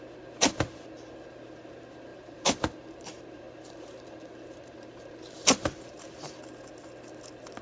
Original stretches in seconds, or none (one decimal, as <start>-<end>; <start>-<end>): 0.0-2.1; 6.4-7.6